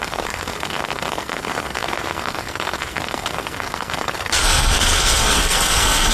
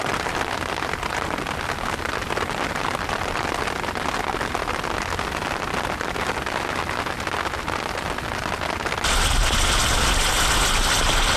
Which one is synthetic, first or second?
first